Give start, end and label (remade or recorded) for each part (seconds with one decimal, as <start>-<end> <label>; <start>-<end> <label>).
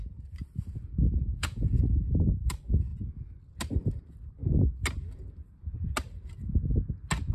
0.0-1.3 recorded; 1.3-1.8 remade; 1.8-7.3 recorded